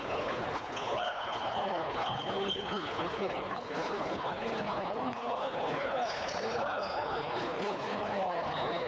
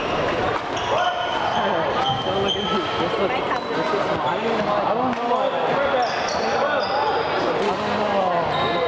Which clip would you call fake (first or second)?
first